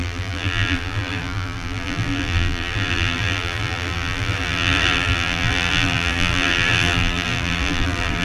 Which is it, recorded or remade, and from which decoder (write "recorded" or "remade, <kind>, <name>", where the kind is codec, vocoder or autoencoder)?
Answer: remade, vocoder, BigVGAN v2